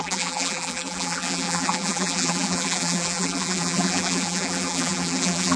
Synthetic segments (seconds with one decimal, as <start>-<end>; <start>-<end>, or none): 0.0-5.6